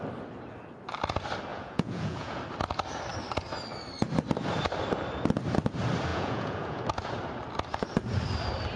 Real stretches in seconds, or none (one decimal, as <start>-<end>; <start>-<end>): 0.0-1.5; 2.4-6.1; 6.8-8.8